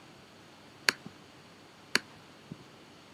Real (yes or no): no